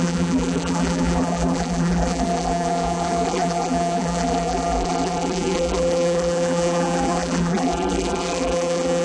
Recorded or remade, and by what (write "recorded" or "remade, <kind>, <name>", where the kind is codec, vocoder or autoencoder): remade, vocoder, BigVGAN v2